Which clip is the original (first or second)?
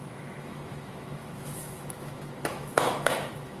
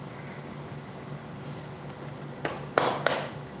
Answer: second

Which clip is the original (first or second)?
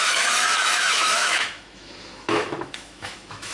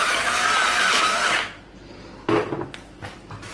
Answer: second